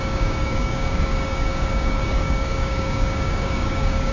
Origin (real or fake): fake